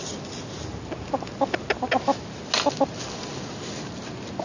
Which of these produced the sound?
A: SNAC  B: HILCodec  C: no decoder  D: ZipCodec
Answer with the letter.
C